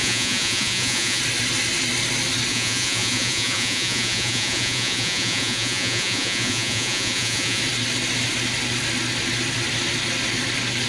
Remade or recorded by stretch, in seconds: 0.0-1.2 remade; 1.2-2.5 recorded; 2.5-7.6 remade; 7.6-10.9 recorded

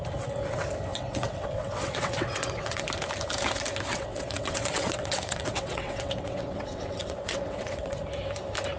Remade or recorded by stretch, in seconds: 0.0-0.9 recorded; 0.9-2.8 remade; 2.8-3.9 recorded; 3.9-8.0 remade; 8.0-8.8 recorded

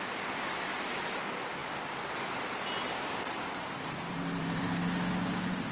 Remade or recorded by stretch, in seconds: 0.0-1.6 recorded; 1.6-4.6 remade; 4.6-5.7 recorded

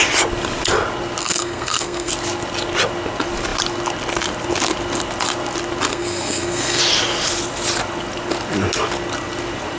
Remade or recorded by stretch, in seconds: 0.0-1.2 recorded; 1.2-2.1 remade; 2.1-5.9 recorded; 5.9-6.8 remade; 6.8-9.8 recorded

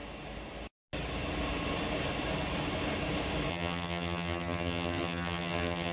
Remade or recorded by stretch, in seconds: 0.0-3.5 recorded; 3.5-5.9 remade

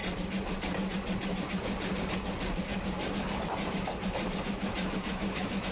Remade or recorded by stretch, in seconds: 0.0-4.5 recorded; 4.5-5.7 remade

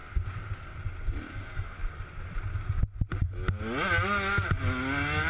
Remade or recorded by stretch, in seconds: 0.0-5.3 recorded